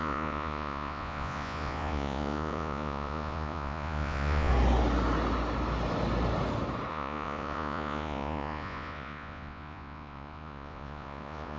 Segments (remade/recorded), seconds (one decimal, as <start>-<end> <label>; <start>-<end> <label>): 0.0-4.5 remade; 4.5-6.9 recorded; 6.9-11.6 remade